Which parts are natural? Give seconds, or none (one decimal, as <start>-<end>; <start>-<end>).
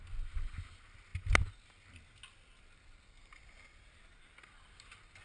0.0-5.2